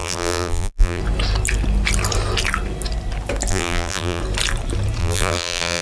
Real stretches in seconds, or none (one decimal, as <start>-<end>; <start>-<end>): 1.0-3.5; 4.2-5.0